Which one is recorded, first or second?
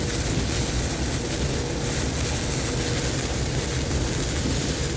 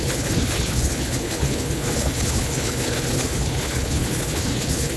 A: first